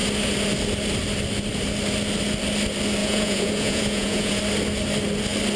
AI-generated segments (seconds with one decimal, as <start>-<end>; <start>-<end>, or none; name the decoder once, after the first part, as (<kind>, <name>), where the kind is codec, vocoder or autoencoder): 3.0-4.4 (vocoder, Vocos)